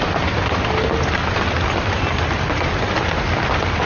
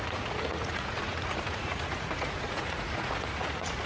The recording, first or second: first